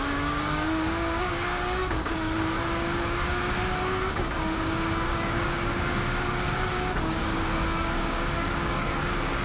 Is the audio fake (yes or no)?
yes